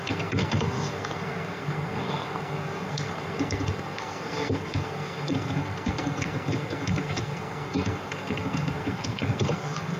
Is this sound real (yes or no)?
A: no